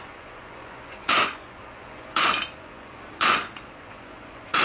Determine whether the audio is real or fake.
fake